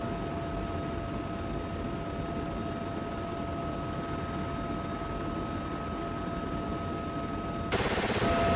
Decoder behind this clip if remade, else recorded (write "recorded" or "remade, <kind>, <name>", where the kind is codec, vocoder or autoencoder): recorded